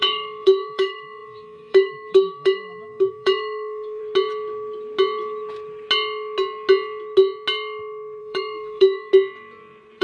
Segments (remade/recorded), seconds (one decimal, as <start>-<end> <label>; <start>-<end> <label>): 0.0-4.0 remade; 4.0-8.2 recorded; 8.2-9.1 remade; 9.1-10.0 recorded